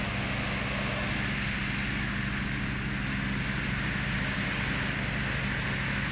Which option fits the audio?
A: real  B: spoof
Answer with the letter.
A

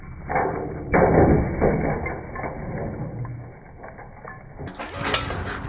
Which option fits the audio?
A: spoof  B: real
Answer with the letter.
B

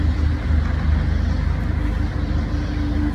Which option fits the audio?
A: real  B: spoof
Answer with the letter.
A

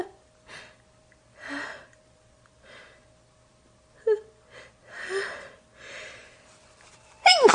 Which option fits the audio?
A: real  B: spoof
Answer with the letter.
A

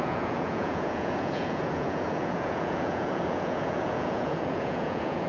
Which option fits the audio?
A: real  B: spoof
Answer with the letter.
B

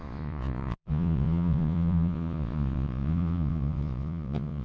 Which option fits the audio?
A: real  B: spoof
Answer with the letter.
B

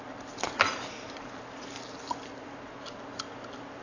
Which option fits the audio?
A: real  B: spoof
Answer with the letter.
A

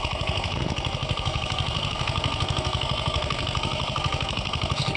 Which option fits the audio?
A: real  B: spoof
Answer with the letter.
B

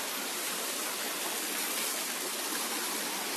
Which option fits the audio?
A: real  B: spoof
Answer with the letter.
A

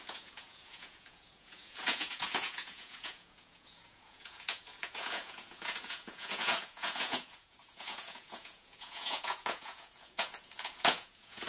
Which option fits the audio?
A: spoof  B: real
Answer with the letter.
A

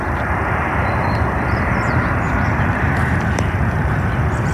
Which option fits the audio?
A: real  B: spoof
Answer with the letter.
B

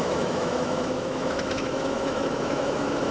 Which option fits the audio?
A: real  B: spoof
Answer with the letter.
B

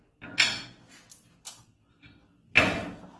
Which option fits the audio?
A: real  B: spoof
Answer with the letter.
A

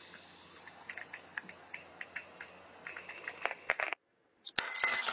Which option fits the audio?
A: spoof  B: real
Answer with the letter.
B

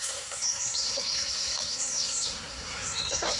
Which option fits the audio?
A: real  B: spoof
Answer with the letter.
B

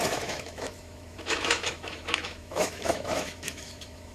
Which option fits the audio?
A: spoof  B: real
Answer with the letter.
A